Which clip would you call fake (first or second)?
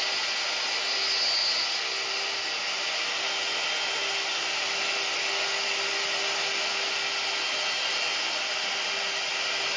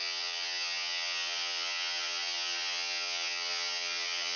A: second